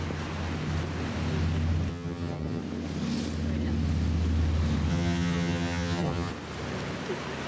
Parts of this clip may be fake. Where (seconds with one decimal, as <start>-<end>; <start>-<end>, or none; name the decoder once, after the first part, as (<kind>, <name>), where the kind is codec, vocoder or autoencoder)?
1.9-2.6 (vocoder, HiFi-GAN); 4.9-6.3